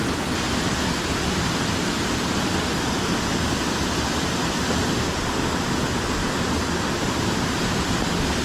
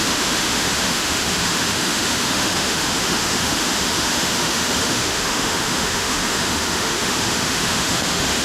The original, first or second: first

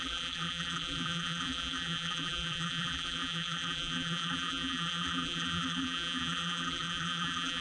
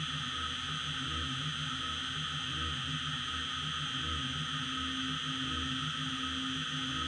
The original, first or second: second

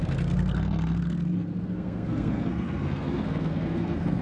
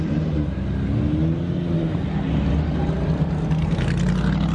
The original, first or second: second